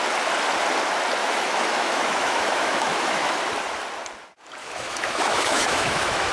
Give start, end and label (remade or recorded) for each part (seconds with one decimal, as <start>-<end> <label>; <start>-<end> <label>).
0.0-1.2 recorded; 1.2-3.4 remade; 3.4-4.6 recorded; 4.6-6.3 remade